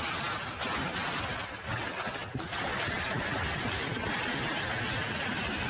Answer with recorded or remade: recorded